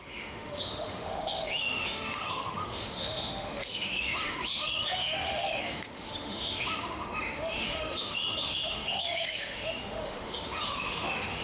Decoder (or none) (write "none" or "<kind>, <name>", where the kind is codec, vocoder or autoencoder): autoencoder, DAC-VAE